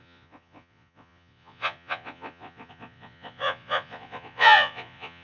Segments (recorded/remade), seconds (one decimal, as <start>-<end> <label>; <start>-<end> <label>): 0.0-5.2 remade